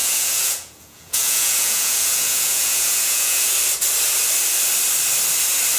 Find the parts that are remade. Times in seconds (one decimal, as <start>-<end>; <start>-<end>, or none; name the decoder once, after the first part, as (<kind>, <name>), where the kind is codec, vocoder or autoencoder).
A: 0.0-3.5 (vocoder, Vocos)